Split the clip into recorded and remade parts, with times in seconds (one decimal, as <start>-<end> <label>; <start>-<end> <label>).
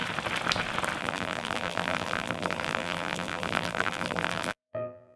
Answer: 0.0-1.0 recorded; 1.0-5.2 remade